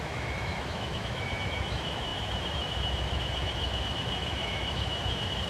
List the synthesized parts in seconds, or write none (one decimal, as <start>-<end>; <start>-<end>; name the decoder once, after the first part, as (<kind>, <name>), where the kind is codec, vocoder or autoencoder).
0.0-5.5 (autoencoder, DAC-VAE)